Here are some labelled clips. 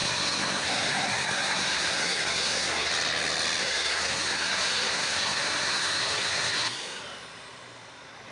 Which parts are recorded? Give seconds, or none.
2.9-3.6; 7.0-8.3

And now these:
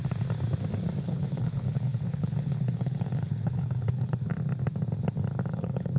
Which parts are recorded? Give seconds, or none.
0.0-1.0; 4.3-5.5

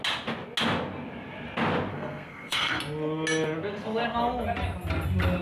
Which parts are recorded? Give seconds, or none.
0.0-1.9; 2.8-5.4

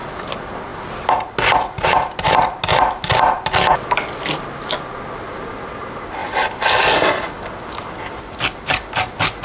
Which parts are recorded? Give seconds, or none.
0.0-9.4

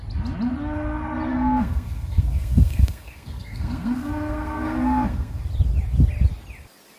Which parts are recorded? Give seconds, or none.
0.0-1.3; 5.4-7.0

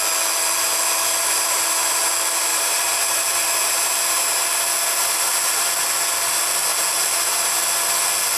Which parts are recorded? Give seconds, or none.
0.0-1.2; 2.1-2.5; 5.7-6.7; 7.6-8.4

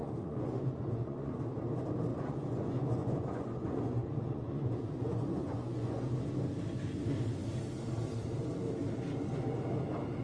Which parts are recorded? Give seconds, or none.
1.4-2.1; 6.0-10.2

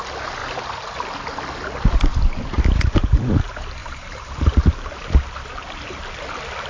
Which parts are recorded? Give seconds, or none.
0.0-6.7